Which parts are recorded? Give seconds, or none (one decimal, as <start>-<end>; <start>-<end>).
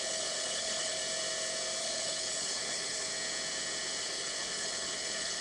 1.0-1.8; 3.1-4.0